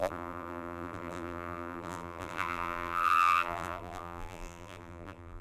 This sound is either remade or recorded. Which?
remade